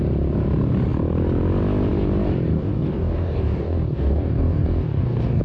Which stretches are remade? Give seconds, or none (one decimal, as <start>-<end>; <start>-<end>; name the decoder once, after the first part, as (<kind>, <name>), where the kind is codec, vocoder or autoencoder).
2.5-5.4 (codec, DAC)